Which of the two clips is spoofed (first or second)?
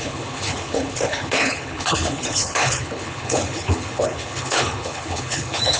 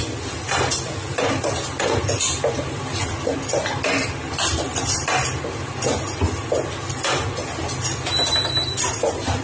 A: first